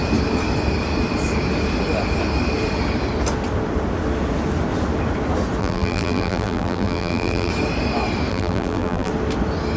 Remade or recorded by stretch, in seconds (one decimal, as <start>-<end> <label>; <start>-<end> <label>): 0.0-5.6 recorded; 5.6-7.5 remade; 7.5-8.3 recorded; 8.3-9.1 remade; 9.1-9.8 recorded